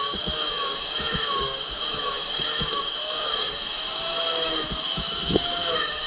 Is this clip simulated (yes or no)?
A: yes